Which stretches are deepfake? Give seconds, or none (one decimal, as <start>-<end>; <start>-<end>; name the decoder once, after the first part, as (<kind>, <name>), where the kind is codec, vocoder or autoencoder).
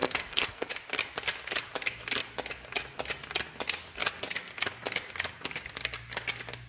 0.0-0.7 (codec, SNAC)